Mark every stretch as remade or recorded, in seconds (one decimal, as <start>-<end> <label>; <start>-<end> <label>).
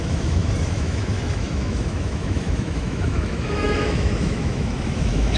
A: 0.0-5.4 remade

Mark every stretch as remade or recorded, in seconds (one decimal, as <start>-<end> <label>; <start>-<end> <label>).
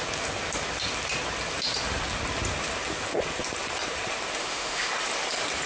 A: 0.0-4.4 recorded; 4.4-4.9 remade; 4.9-5.7 recorded